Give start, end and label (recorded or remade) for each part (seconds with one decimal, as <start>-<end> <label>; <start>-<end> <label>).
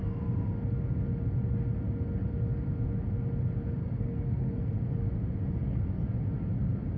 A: 0.0-3.8 recorded; 3.8-4.7 remade; 4.7-7.0 recorded